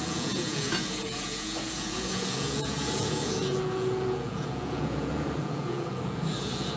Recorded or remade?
remade